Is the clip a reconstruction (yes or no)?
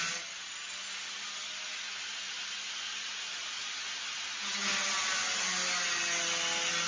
no